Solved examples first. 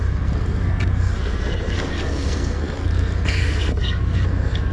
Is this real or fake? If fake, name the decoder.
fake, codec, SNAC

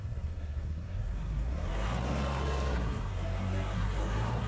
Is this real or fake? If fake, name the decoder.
fake, codec, SNAC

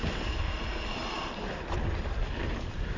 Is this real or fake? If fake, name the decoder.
real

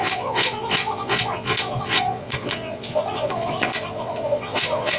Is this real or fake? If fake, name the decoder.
fake, vocoder, Vocos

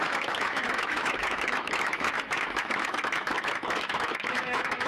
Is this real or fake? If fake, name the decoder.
fake, autoencoder, DAC-VAE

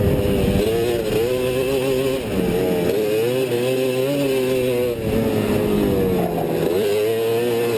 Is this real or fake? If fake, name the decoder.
real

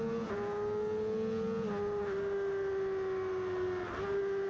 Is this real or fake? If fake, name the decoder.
real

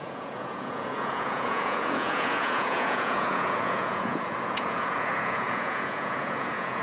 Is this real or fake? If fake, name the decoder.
fake, vocoder, Vocos